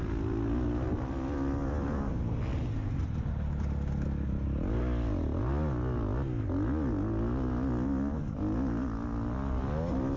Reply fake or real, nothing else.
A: real